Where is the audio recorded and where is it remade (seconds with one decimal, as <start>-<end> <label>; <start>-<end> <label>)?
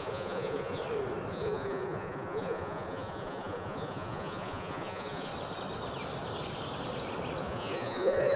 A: 0.0-0.8 remade; 0.8-1.3 recorded; 1.3-5.3 remade; 5.3-7.4 recorded; 7.4-8.4 remade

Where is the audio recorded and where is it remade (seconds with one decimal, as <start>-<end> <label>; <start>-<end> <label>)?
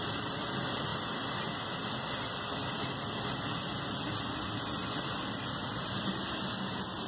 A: 0.0-7.1 recorded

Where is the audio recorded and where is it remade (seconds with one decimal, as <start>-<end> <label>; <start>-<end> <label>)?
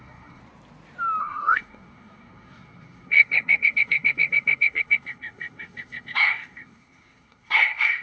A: 0.0-0.4 remade; 0.4-1.2 recorded; 1.2-8.0 remade